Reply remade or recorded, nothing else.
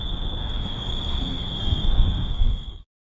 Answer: remade